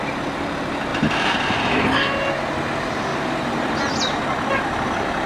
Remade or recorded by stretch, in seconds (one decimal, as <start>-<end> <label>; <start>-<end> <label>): 0.0-0.9 recorded; 0.9-1.5 remade; 1.5-3.1 recorded; 3.1-3.7 remade; 3.7-5.3 recorded